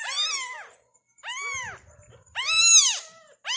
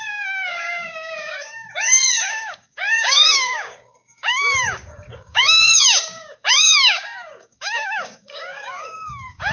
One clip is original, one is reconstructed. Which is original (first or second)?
first